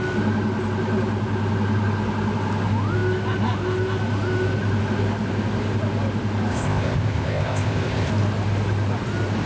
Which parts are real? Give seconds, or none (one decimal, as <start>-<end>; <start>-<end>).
0.0-6.5; 8.1-9.5